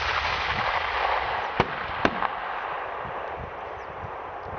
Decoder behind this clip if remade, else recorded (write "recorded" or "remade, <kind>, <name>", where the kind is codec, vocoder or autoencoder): recorded